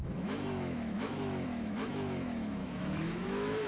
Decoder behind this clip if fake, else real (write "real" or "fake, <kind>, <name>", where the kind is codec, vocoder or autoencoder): fake, autoencoder, DAC-VAE